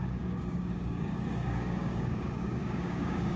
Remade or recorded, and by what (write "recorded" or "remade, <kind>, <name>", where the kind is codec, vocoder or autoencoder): remade, codec, DAC